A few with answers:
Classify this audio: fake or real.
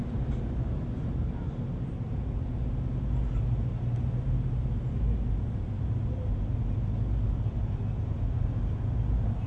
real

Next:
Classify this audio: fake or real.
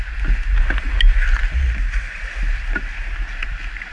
real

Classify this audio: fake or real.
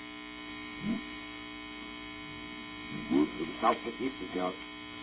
real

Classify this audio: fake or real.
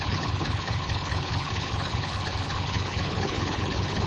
fake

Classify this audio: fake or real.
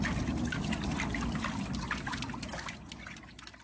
real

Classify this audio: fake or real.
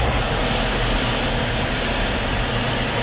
real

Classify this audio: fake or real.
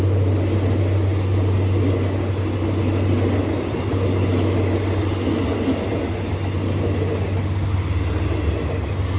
real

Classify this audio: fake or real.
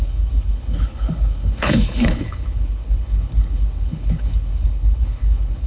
fake